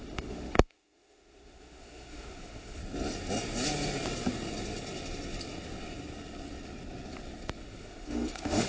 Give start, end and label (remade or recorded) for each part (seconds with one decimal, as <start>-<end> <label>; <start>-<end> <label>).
0.0-2.8 remade; 2.8-7.6 recorded; 7.6-8.7 remade